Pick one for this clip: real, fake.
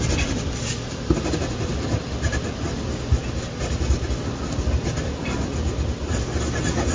real